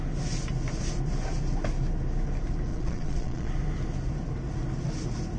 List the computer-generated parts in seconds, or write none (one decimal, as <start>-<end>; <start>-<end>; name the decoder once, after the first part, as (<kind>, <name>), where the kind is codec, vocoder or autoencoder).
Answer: 2.7-3.5 (vocoder, Vocos)